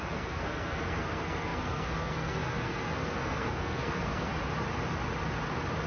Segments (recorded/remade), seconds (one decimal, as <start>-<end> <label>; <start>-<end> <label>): 0.0-4.3 remade; 4.3-5.9 recorded